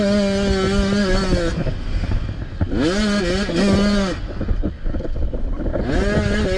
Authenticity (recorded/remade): recorded